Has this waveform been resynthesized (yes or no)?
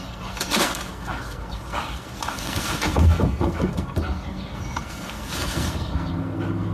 yes